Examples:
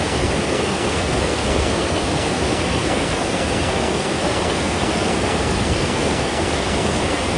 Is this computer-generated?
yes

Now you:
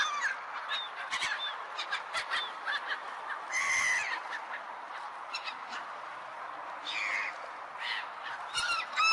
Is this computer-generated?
no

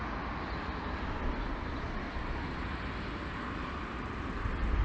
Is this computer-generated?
no